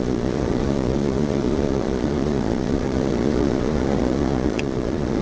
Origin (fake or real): fake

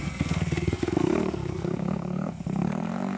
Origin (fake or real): fake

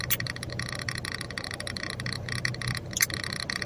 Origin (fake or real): real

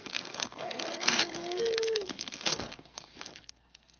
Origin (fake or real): fake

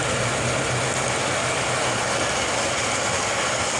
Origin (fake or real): real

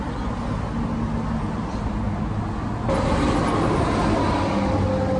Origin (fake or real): real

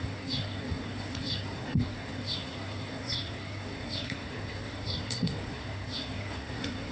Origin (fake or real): fake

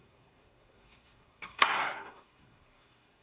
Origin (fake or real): fake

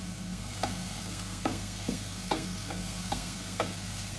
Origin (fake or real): fake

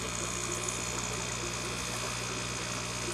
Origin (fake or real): real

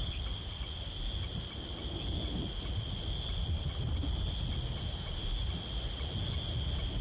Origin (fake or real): real